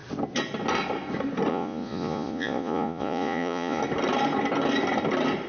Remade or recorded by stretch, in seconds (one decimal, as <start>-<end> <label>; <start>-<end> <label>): 0.0-1.5 recorded; 1.5-3.8 remade; 3.8-5.5 recorded